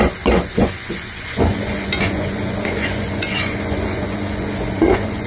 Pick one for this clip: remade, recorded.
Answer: remade